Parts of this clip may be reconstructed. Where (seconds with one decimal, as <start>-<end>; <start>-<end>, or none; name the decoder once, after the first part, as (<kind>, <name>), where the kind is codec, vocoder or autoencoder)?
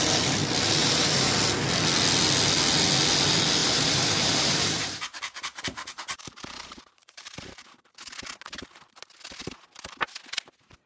0.8-1.3 (vocoder, BigVGAN v2); 3.6-7.9